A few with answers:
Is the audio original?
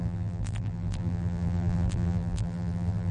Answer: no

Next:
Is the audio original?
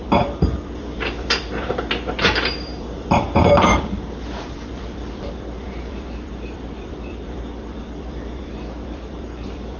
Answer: no